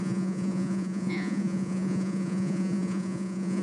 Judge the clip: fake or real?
fake